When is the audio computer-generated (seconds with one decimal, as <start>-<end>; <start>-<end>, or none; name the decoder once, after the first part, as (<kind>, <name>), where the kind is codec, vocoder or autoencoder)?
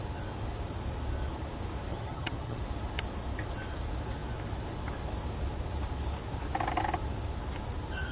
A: 1.9-2.6 (vocoder, HiFi-GAN)